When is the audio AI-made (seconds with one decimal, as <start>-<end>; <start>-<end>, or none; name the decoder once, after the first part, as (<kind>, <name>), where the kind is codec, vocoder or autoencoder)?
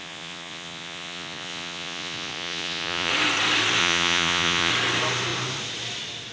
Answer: 0.0-3.1 (vocoder, Vocos); 3.8-4.7